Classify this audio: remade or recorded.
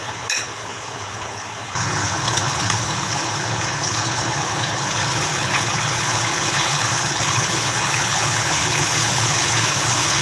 remade